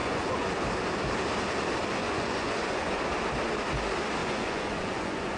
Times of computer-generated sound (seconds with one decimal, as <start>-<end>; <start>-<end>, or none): 0.0-0.5; 2.0-3.0; 4.2-5.4